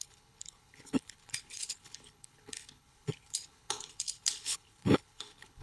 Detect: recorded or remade remade